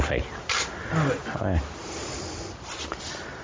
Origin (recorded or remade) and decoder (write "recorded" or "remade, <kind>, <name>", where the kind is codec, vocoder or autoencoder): recorded